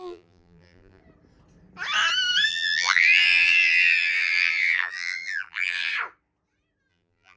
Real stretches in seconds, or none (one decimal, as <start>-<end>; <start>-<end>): 1.0-2.5; 5.9-6.9